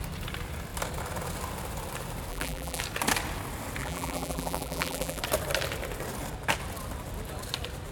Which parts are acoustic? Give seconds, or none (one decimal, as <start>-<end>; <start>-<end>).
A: 0.0-2.3; 2.8-3.8; 5.2-7.9